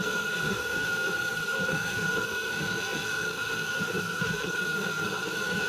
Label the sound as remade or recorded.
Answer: remade